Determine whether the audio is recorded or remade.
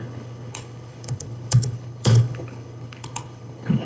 remade